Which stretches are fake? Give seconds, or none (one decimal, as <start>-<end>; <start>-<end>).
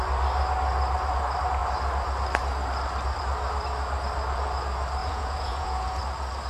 5.0-6.0